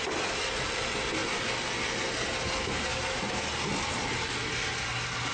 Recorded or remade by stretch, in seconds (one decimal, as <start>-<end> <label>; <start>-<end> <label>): 0.0-5.3 recorded